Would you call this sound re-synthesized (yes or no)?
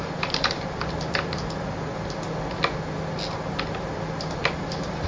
no